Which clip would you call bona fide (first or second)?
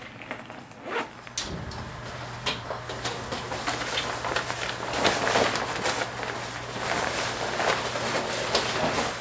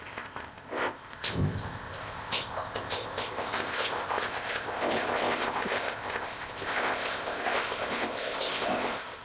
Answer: first